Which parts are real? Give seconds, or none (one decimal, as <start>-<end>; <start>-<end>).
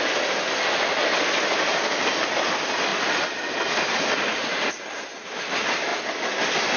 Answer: 0.0-6.8